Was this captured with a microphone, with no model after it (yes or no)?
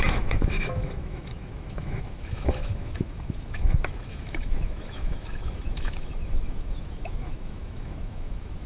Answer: no